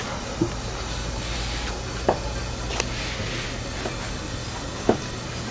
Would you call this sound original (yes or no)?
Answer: yes